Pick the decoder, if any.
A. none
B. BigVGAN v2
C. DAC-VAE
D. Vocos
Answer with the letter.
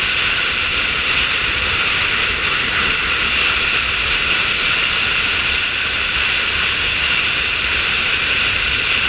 B